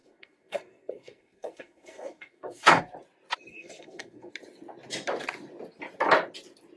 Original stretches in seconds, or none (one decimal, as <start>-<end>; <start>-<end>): 2.8-3.5; 4.3-6.8